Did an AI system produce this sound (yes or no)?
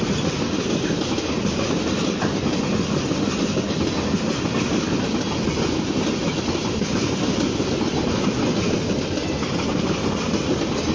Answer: no